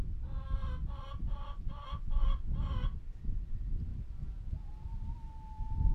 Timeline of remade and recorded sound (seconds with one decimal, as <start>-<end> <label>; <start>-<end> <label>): 0.0-5.9 recorded